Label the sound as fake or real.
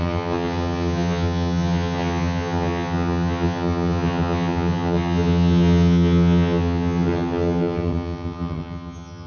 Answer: fake